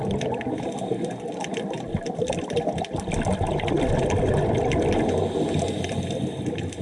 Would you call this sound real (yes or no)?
yes